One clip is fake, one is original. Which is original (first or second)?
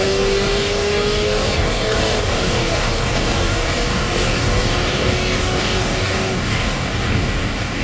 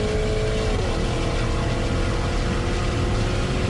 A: second